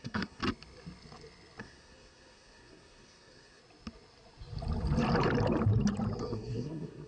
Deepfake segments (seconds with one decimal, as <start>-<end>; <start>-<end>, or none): 0.0-0.4; 1.6-3.6; 6.2-7.1